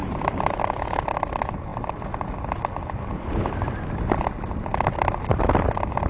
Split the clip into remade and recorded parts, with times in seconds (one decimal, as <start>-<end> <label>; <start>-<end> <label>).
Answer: 0.0-0.6 remade; 0.6-6.1 recorded